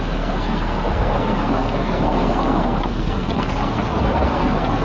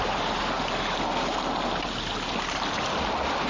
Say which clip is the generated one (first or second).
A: first